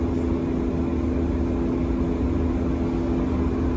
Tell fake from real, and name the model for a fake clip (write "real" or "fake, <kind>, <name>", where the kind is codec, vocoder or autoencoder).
real